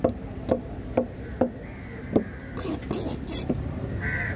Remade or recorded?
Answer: recorded